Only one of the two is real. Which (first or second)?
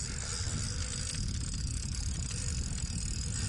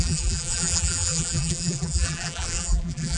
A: first